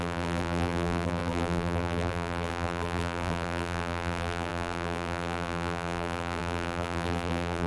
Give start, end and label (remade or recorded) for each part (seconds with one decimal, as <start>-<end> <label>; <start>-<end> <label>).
0.0-7.7 remade